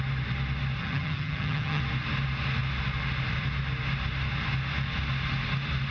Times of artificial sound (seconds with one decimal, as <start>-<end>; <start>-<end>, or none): 0.8-1.8